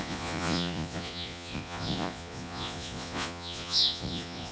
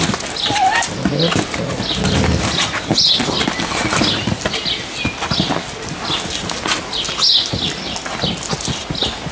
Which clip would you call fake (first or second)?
first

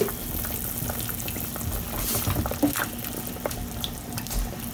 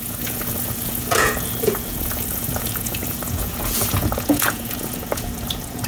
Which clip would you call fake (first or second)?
second